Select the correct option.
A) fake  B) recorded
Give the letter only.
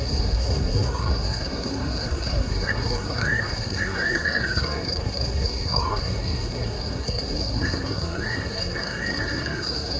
A